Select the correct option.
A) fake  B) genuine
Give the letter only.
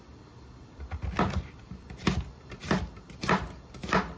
B